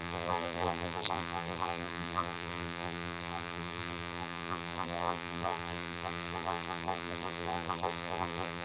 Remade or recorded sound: remade